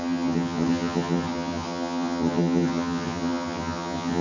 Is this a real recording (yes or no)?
no